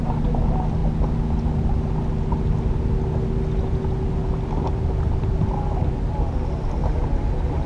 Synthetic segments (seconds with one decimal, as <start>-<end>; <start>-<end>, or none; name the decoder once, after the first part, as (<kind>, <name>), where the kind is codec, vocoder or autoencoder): none